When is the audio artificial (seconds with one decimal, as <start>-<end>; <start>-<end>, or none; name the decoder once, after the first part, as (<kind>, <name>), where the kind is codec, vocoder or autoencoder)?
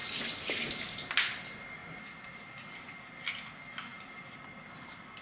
1.8-2.5 (vocoder, BigVGAN v2)